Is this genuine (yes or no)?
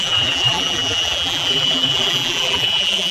no